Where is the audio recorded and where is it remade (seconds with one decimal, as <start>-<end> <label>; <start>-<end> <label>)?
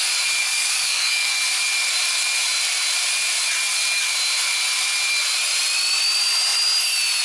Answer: 0.0-0.4 recorded; 0.4-1.3 remade; 1.3-7.2 recorded